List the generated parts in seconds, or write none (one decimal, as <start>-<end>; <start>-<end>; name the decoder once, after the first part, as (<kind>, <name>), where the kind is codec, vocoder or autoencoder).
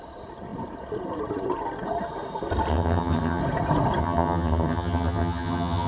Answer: 2.7-3.4 (vocoder, HiFi-GAN); 4.0-5.9